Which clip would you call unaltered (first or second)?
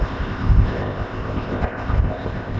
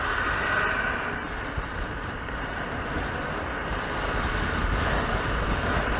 second